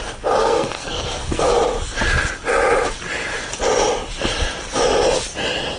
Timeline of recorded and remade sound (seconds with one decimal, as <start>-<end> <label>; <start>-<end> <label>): 0.0-0.4 recorded; 0.4-1.5 remade; 1.5-5.8 recorded